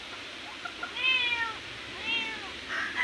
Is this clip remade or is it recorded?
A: recorded